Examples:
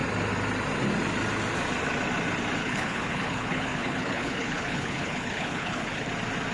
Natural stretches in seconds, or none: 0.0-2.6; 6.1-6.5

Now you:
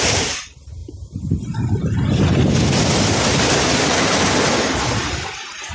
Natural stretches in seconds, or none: 0.0-5.7

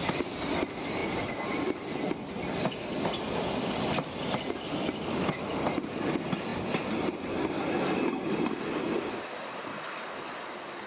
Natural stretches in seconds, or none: 0.0-10.9

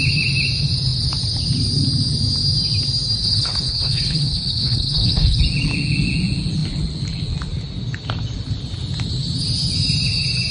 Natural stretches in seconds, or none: 0.0-3.2; 5.4-10.5

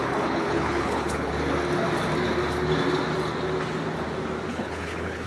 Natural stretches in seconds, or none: 1.3-4.5

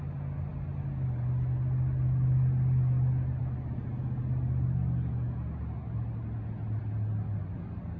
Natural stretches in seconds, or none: 0.0-8.0